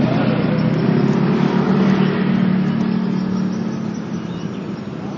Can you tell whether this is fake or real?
real